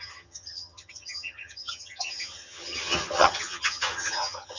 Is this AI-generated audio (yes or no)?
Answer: yes